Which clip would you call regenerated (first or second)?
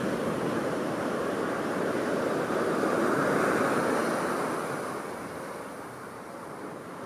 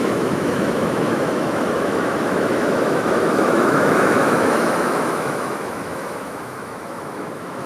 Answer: second